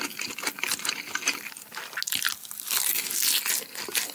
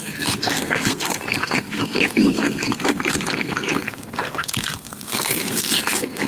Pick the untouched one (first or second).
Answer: first